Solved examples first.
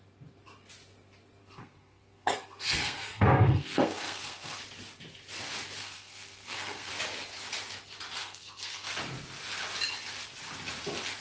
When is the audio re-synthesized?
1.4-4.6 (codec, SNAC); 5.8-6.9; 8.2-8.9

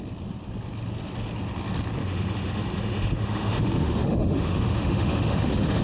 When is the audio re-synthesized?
2.0-5.8 (autoencoder, DAC-VAE)

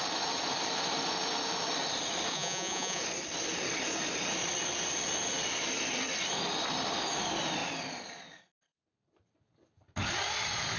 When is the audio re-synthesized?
2.3-3.0 (vocoder, Vocos)

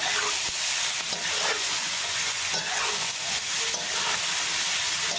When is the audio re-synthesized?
1.5-3.4 (vocoder, Vocos)

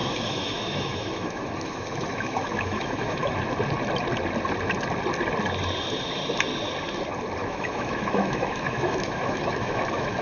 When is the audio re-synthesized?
0.0-3.3 (autoencoder, DAC-VAE); 7.4-10.2

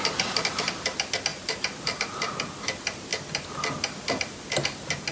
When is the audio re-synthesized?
1.3-2.1 (vocoder, BigVGAN v2)

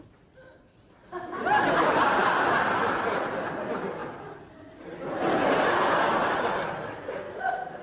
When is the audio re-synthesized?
7.2-7.8 (codec, SNAC)